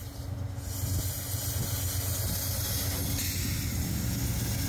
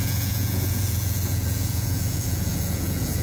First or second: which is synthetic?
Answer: second